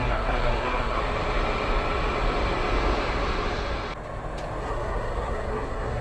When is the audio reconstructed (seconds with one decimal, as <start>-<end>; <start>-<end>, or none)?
0.0-1.0; 4.6-6.0

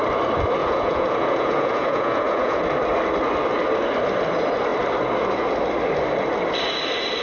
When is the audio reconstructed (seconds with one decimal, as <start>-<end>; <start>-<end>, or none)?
0.6-2.6

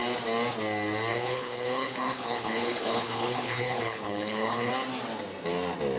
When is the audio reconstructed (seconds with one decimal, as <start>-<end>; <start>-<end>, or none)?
1.1-4.7

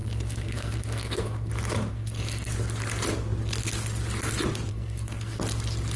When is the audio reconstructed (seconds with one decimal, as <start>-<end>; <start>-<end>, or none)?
0.0-1.5; 1.9-2.5; 4.7-5.4